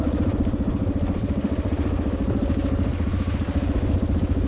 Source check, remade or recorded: recorded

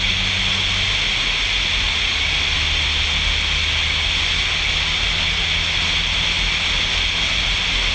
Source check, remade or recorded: recorded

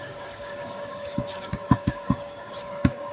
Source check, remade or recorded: remade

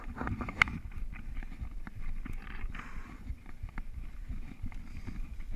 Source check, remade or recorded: recorded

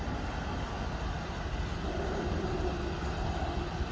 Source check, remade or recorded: recorded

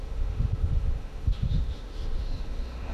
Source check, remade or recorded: remade